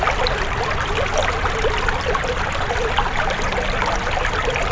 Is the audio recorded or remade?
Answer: recorded